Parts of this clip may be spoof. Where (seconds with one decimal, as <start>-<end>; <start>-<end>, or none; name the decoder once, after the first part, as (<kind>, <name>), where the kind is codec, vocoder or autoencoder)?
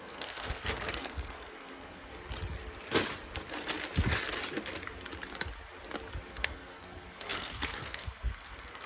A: 0.0-2.1 (codec, SNAC); 6.3-8.9